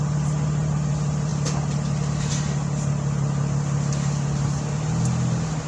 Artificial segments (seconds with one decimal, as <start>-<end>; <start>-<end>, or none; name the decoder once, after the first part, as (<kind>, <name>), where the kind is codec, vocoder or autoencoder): none